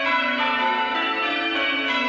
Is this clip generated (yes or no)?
no